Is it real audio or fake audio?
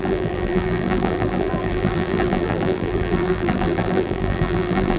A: fake